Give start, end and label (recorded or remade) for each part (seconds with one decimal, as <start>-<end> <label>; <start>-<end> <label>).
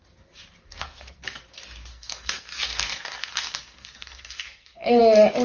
0.0-0.6 recorded; 0.6-1.2 remade; 1.2-1.9 recorded; 1.9-5.0 remade; 5.0-5.4 recorded